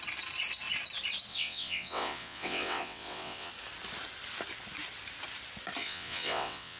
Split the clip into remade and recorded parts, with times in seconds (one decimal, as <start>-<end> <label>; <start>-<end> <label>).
0.0-1.3 recorded; 1.3-3.5 remade; 3.5-5.8 recorded; 5.8-6.8 remade